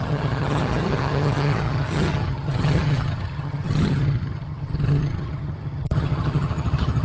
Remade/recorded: remade